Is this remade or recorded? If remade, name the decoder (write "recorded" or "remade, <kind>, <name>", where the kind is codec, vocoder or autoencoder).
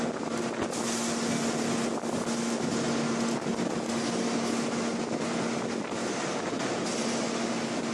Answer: recorded